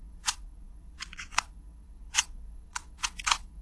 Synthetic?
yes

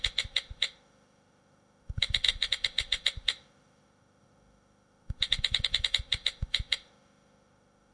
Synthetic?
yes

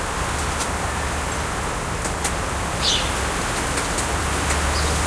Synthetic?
no